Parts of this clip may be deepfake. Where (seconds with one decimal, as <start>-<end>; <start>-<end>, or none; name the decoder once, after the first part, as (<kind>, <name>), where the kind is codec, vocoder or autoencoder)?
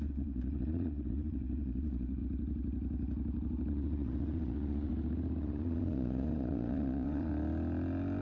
0.0-2.2 (vocoder, Vocos); 3.7-4.9; 5.4-7.3